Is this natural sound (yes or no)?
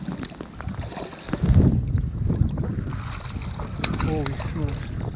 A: yes